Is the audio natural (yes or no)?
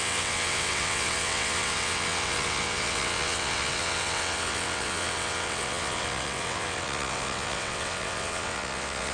no